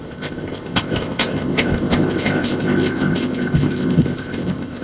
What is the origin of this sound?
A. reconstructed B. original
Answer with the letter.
A